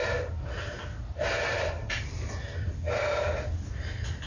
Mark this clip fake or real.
real